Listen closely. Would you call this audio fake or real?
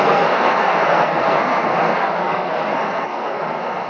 fake